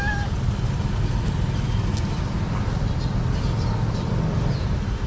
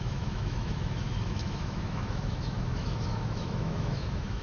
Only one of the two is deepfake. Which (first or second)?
second